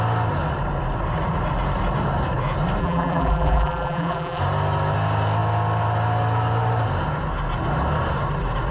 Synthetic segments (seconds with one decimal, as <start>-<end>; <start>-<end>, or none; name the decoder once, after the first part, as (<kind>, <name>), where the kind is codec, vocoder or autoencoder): 2.8-4.4 (vocoder, BigVGAN v2)